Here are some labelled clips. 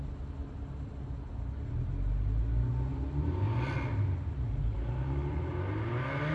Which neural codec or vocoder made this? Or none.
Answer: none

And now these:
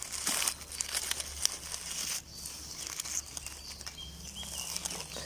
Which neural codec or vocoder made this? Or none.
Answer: none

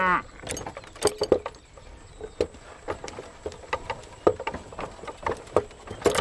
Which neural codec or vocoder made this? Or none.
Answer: none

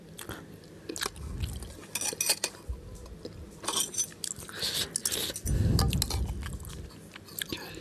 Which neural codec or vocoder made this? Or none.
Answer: none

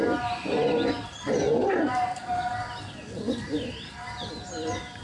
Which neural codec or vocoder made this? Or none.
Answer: none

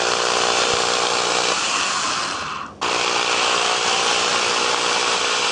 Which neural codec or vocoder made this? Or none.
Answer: none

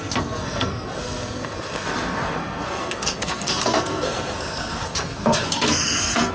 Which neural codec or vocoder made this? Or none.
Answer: codec, SNAC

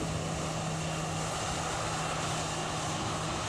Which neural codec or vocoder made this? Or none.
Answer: none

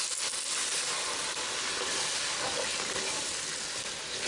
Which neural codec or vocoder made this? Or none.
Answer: none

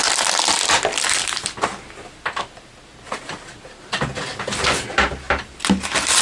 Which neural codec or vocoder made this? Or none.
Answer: none